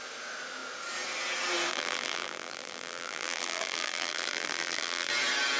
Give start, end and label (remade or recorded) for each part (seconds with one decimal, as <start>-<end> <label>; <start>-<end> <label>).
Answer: 0.0-1.7 recorded; 1.7-5.1 remade; 5.1-5.6 recorded